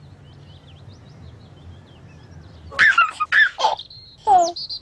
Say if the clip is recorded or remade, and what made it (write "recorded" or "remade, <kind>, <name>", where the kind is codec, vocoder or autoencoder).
recorded